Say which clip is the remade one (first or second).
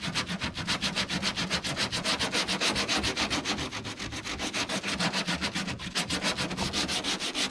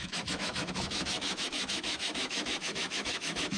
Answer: second